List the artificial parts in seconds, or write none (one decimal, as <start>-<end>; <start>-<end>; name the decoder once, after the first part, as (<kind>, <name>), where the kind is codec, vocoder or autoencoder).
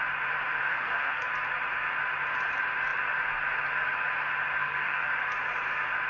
0.7-1.3 (codec, SNAC); 4.6-5.1